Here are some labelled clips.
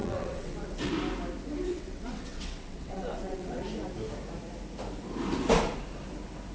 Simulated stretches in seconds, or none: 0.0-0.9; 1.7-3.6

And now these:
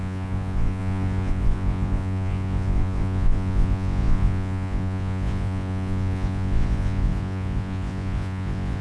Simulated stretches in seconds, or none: 0.0-8.8

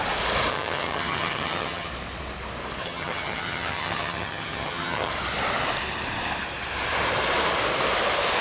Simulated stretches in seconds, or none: 0.5-1.9; 2.8-5.1